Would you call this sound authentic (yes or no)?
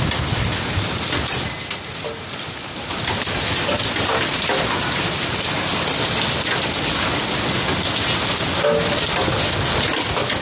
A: yes